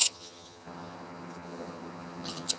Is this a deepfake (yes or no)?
yes